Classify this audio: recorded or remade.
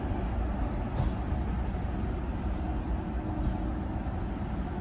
recorded